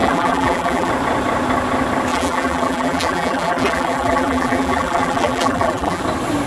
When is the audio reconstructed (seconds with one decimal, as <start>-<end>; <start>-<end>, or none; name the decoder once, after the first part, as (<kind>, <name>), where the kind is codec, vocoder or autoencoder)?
0.0-0.9 (vocoder, BigVGAN v2); 2.1-6.0